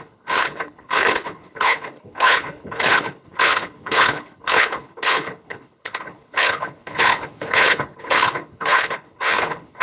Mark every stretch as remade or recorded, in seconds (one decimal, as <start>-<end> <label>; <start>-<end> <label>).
0.0-9.8 remade